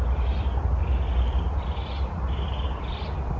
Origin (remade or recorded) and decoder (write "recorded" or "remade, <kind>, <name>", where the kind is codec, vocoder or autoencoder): recorded